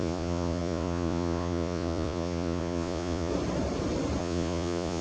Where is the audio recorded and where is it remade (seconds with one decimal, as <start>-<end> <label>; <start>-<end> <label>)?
0.0-3.3 remade; 3.3-4.2 recorded; 4.2-5.0 remade